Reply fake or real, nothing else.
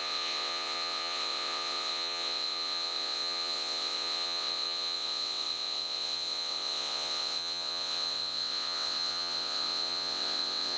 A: fake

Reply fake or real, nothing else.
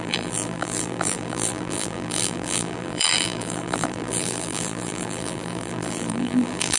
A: fake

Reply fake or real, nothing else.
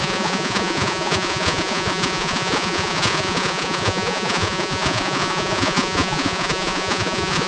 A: fake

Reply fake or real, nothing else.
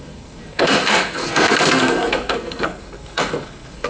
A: fake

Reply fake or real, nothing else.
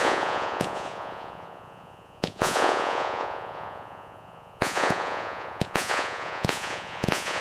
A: fake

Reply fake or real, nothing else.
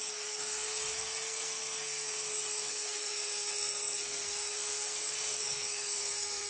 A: fake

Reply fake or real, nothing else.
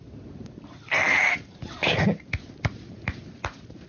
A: real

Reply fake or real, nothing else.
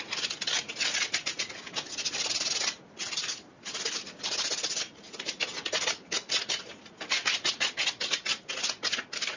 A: real